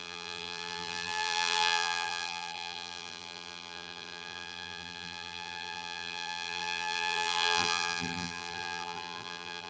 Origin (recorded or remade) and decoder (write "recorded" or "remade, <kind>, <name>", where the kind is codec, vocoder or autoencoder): remade, vocoder, BigVGAN v2